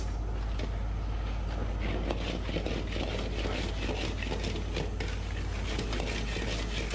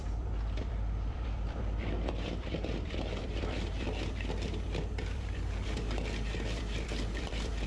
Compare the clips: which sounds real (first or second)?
first